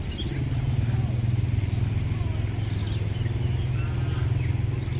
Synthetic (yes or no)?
no